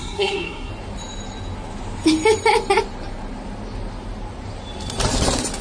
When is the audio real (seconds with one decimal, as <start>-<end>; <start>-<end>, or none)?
0.7-5.6